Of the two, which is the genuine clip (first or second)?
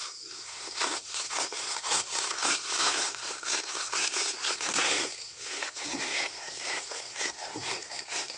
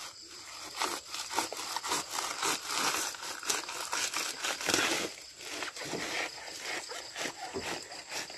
second